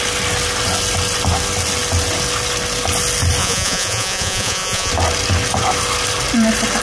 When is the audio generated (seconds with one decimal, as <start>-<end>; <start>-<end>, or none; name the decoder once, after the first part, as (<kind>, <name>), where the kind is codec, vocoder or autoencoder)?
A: 3.4-4.9 (vocoder, Vocos)